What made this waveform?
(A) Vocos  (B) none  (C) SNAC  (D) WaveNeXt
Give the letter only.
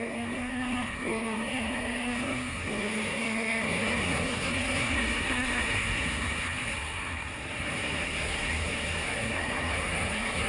C